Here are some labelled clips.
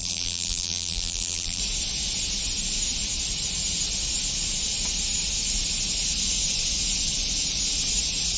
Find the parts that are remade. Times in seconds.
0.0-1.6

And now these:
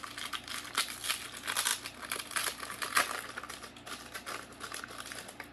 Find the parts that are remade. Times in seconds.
none

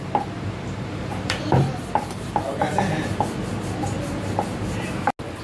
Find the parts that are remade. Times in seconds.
1.1-3.4

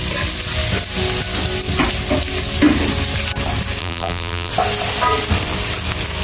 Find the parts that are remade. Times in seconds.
3.8-4.5

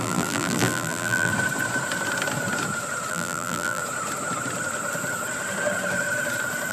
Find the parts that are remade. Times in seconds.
0.0-1.3; 3.1-3.8